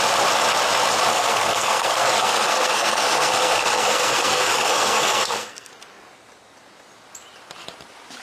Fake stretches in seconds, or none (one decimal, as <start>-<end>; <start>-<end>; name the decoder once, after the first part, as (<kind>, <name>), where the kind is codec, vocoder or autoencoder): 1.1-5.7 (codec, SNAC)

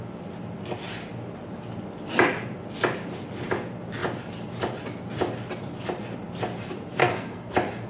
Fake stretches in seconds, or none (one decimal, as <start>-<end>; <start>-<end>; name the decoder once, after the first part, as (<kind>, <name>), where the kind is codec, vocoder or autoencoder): 7.0-7.5 (codec, SNAC)

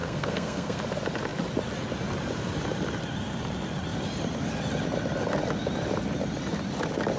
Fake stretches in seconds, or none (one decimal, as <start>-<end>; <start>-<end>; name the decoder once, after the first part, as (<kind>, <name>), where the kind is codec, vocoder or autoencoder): 0.0-0.8 (codec, SNAC)